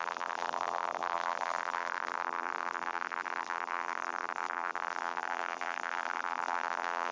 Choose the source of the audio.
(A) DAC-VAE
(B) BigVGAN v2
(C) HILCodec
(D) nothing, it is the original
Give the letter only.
B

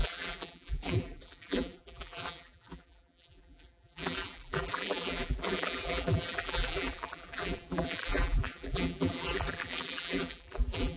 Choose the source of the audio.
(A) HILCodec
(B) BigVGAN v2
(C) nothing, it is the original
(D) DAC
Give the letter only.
B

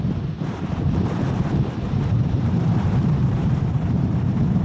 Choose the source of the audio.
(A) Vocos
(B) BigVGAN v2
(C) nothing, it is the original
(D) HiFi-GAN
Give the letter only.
B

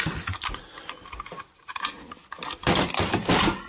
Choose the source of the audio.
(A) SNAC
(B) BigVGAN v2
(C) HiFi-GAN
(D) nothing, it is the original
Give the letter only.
D